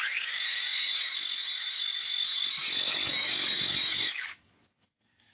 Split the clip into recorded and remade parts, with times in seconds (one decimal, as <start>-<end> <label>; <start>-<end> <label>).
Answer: 0.0-5.3 remade